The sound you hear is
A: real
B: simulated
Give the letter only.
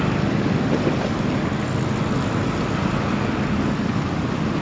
A